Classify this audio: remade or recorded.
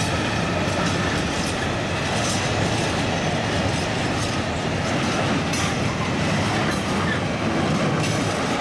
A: recorded